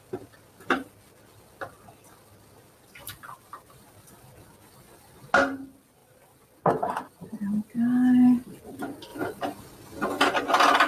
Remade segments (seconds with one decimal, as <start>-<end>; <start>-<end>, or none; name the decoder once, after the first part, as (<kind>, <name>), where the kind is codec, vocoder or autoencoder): none